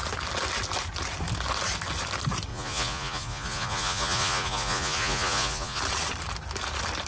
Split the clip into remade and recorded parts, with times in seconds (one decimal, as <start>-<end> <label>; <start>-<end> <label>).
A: 0.0-2.5 recorded; 2.5-5.8 remade; 5.8-7.1 recorded